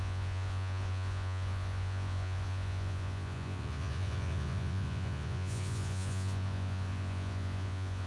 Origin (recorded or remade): remade